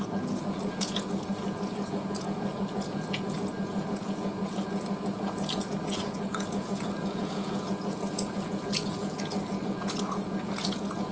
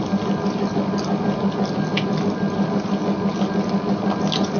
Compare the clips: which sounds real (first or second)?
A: second